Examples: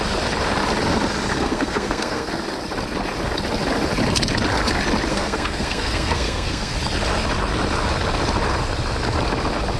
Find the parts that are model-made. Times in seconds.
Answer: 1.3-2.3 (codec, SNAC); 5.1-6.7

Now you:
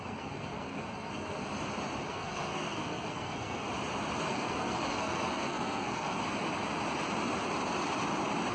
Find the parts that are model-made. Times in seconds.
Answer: 0.0-1.4 (codec, SNAC); 2.1-3.7; 4.2-6.2

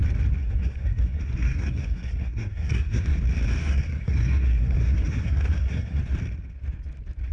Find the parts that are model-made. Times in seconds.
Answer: 0.4-3.2 (codec, SNAC); 3.6-6.0